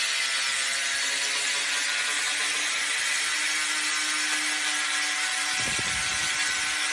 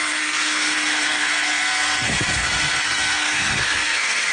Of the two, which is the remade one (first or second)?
second